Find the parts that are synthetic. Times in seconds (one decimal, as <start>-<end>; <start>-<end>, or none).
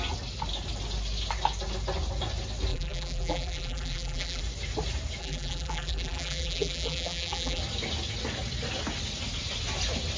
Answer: 2.7-4.4; 5.2-7.6